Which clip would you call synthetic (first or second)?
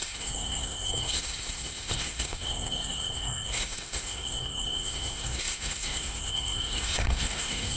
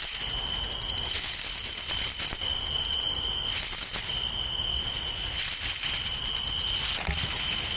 first